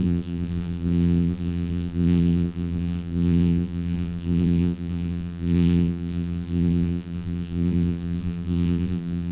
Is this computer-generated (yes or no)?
yes